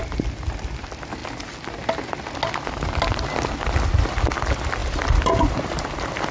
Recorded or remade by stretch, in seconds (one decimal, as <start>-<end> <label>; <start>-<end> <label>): 0.0-6.3 recorded